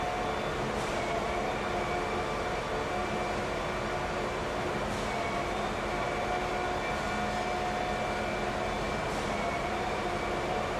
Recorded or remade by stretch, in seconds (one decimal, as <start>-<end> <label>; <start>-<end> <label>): 0.0-3.0 recorded; 3.0-3.6 remade; 3.6-10.8 recorded